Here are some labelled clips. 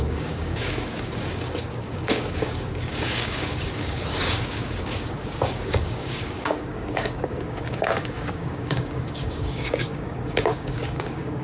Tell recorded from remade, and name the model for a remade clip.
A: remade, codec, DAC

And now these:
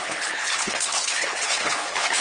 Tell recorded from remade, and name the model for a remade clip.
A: remade, codec, HILCodec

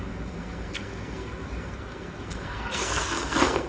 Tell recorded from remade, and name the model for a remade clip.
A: remade, codec, SNAC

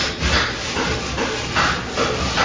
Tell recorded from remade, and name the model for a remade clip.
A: recorded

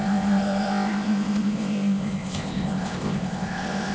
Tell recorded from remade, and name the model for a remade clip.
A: remade, codec, ZipCodec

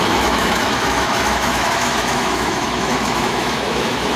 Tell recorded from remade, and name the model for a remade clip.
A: remade, autoencoder, DAC-VAE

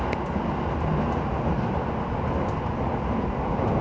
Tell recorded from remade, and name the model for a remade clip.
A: recorded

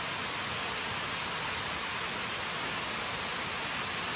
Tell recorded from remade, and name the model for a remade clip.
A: recorded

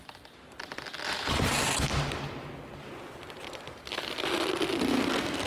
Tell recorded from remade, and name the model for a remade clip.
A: recorded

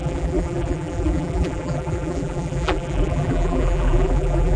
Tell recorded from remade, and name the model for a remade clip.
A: remade, vocoder, BigVGAN v2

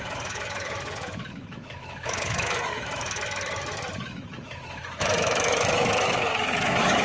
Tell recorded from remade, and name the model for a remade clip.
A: remade, autoencoder, DAC-VAE